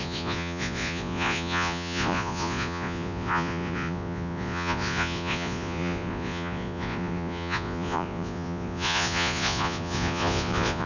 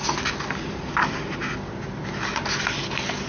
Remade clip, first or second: first